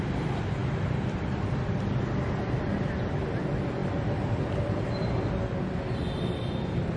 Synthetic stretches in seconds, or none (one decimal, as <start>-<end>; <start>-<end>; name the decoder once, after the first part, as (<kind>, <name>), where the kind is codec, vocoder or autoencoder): none